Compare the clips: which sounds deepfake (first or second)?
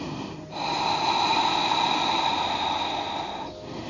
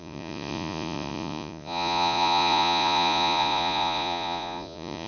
second